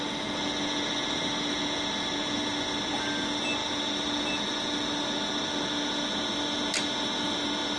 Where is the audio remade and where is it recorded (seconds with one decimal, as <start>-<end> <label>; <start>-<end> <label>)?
0.0-7.8 recorded